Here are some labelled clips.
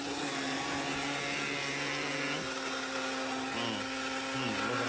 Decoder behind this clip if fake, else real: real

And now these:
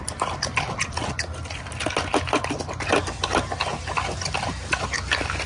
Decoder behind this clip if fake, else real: real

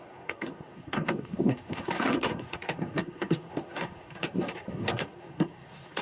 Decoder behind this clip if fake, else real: fake, codec, SNAC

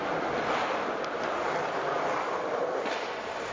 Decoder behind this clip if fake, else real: real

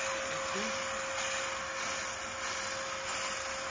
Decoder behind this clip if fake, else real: real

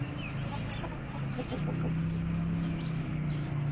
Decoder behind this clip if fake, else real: real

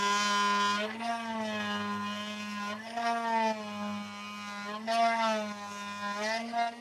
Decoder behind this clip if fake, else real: real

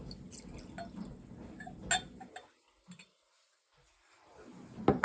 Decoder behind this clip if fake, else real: real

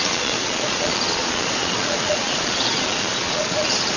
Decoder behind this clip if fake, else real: fake, vocoder, Vocos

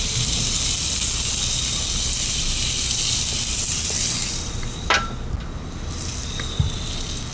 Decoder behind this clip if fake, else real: real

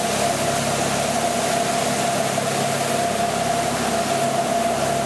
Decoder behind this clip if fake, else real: real